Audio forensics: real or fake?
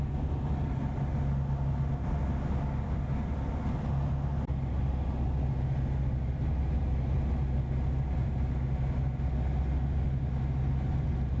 real